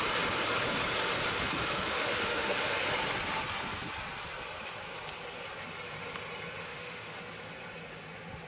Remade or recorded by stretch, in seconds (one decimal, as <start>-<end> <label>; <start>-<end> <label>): 0.0-1.3 recorded; 1.3-2.8 remade; 2.8-6.6 recorded; 6.6-7.2 remade; 7.2-8.5 recorded